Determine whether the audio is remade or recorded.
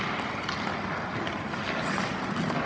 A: recorded